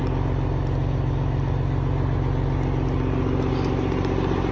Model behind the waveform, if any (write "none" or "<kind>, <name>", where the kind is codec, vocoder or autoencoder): none